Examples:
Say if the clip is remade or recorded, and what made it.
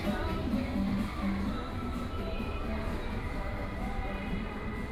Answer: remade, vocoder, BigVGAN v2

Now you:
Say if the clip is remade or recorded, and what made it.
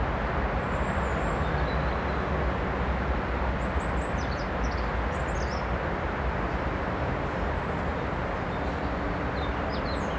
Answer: recorded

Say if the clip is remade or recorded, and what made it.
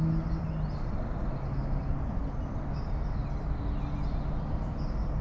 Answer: recorded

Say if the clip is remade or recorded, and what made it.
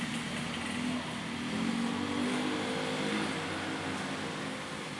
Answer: recorded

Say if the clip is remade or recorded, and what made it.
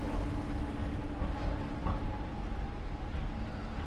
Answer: recorded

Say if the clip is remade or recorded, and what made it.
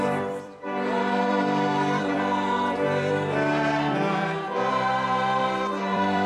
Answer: remade, vocoder, BigVGAN v2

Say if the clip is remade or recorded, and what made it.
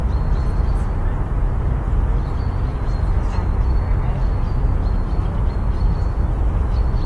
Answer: recorded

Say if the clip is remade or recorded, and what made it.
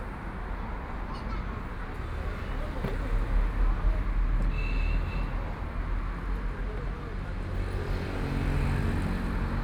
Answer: recorded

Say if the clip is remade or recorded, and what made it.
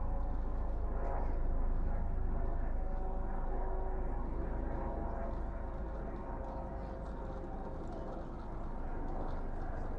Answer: recorded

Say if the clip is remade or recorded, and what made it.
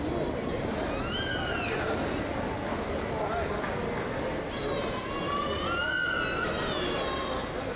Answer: recorded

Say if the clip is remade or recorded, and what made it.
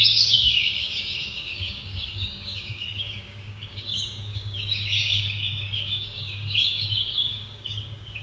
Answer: remade, codec, DAC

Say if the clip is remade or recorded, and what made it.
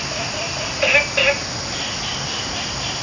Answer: recorded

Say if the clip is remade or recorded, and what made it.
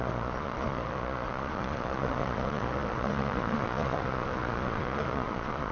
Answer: remade, vocoder, Vocos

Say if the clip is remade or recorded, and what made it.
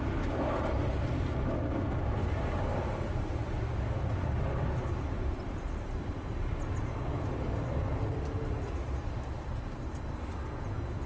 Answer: recorded